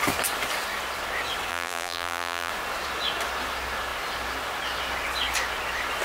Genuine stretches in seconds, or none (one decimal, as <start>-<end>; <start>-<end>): 0.0-1.5; 2.5-6.0